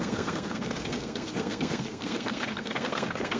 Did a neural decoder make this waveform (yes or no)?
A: yes